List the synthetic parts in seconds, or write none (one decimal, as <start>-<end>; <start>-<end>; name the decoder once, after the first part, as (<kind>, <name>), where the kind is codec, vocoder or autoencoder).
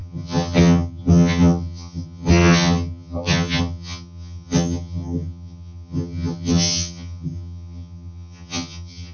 0.0-9.1 (vocoder, HiFi-GAN)